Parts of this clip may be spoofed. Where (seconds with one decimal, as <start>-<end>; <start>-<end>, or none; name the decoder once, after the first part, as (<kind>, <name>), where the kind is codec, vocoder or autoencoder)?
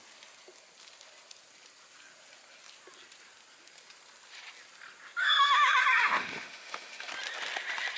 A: 5.2-5.8 (autoencoder, DAC-VAE); 6.2-7.1